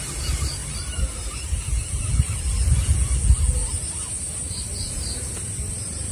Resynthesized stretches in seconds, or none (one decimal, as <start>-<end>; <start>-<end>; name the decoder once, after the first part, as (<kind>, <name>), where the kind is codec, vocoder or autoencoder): 0.6-2.1 (vocoder, BigVGAN v2); 3.6-6.1